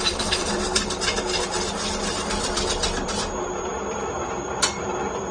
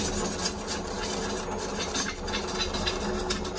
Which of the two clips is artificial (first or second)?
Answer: first